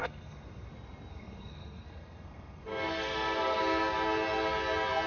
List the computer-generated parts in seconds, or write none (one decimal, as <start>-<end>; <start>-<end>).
0.0-0.7; 1.1-3.6